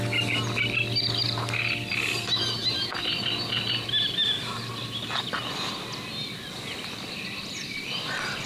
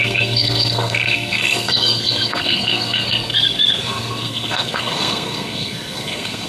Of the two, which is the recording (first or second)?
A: first